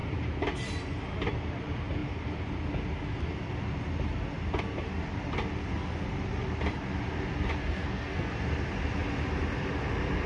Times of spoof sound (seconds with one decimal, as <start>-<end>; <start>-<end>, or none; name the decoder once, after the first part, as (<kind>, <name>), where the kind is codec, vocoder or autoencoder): 7.6-8.3 (codec, SNAC)